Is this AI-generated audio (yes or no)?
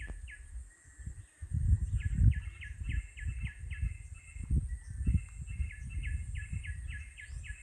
no